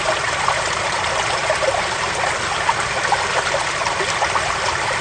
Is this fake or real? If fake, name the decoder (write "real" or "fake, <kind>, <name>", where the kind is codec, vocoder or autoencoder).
real